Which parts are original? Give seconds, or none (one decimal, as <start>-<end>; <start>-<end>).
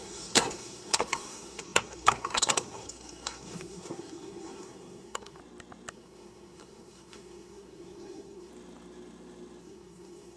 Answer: 5.4-5.9; 8.5-9.6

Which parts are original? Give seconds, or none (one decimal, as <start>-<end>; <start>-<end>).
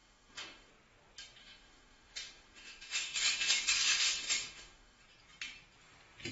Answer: 0.7-1.4; 5.0-6.3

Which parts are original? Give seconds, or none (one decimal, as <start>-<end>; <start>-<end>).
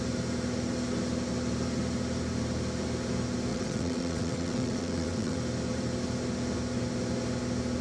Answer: 0.0-3.5; 5.4-7.8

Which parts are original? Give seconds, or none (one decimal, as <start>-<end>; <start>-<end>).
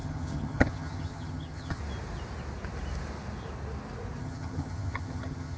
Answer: 1.8-4.2